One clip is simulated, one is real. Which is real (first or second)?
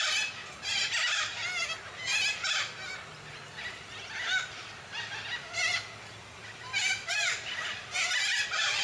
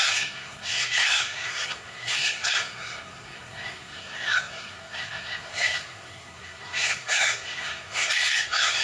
first